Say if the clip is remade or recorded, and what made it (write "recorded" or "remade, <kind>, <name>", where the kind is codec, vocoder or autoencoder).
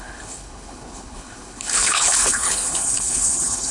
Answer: remade, codec, HILCodec